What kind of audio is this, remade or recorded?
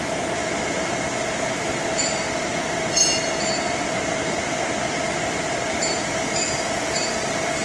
recorded